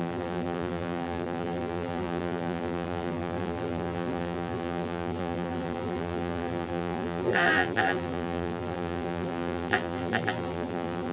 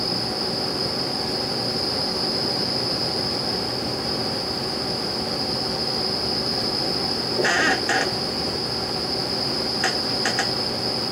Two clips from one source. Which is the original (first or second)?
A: second